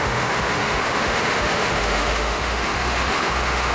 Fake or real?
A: fake